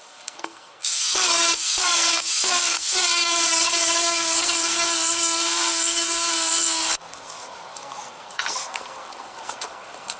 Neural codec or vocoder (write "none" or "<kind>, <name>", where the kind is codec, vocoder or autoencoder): codec, SNAC